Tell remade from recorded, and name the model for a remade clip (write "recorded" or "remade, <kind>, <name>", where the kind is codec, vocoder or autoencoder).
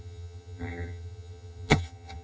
remade, vocoder, HiFi-GAN